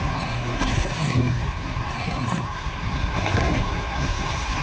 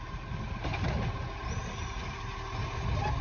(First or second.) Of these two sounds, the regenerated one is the first